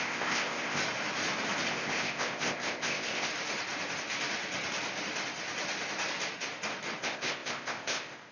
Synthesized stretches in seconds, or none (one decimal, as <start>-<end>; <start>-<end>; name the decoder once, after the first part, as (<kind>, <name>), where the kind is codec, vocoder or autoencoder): 0.0-0.8 (codec, ZipCodec); 1.7-3.3; 7.0-8.3

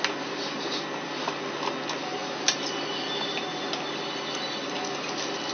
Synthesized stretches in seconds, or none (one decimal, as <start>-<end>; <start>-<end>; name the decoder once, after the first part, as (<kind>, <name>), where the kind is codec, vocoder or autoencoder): none

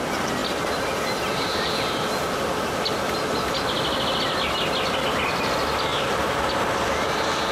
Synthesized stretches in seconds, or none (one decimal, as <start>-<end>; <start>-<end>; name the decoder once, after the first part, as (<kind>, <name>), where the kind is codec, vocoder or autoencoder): 5.9-6.9 (vocoder, BigVGAN v2)